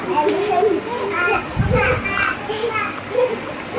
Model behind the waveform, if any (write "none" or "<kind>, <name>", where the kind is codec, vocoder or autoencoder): none